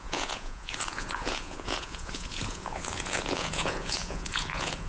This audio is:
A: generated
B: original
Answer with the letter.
A